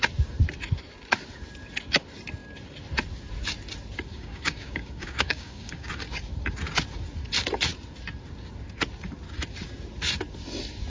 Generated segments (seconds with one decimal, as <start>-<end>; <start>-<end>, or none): 4.1-5.9